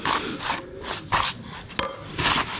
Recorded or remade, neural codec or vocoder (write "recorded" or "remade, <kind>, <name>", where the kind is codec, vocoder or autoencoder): recorded